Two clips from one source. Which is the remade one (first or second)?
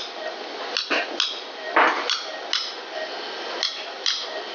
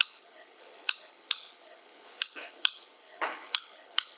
second